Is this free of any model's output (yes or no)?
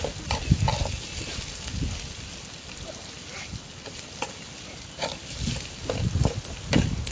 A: yes